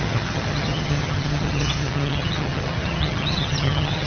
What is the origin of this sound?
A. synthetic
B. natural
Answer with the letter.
A